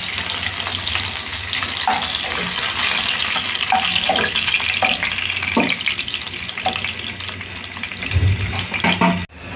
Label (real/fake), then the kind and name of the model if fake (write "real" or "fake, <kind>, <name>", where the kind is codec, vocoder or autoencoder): real